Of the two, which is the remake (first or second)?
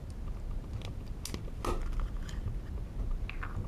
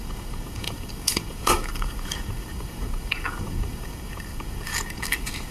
second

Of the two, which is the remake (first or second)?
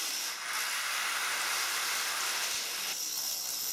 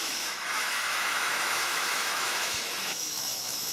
second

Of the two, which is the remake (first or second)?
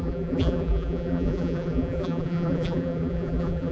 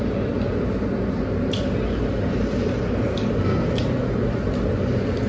first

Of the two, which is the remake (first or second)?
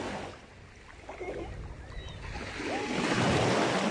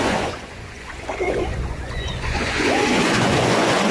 second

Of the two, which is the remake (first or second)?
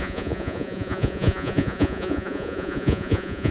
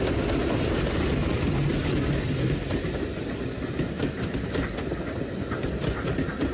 first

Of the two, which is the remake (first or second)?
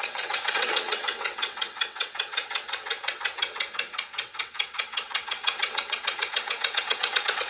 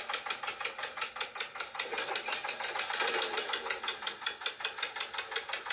first